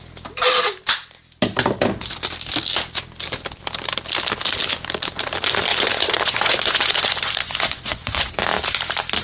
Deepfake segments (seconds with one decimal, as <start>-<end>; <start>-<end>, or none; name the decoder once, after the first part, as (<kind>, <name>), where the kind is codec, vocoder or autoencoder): 5.7-8.3 (vocoder, Vocos)